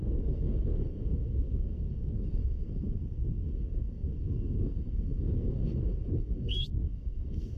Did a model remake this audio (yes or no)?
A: yes